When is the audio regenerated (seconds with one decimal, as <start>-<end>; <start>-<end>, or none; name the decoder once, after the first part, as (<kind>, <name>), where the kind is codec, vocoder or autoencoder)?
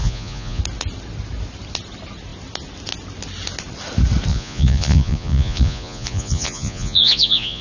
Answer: 0.0-0.6 (vocoder, Vocos); 4.3-7.6